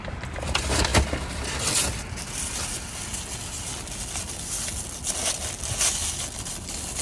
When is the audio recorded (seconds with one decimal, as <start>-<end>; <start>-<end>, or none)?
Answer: 0.0-7.0